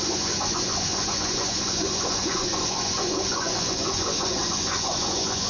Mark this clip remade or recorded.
remade